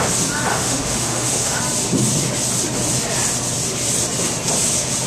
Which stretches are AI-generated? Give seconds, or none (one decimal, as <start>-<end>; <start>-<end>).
0.5-1.6